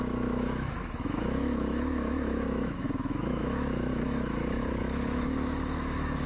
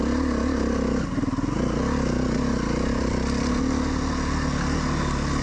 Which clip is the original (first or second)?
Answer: second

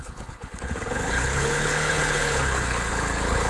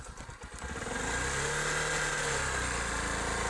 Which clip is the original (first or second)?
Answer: second